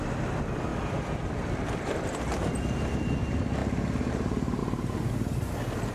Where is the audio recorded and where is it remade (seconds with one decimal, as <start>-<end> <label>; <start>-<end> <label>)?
0.0-0.7 recorded; 0.7-3.1 remade; 3.1-3.6 recorded; 3.6-4.1 remade; 4.1-5.9 recorded